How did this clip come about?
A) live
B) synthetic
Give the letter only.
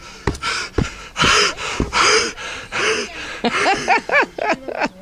A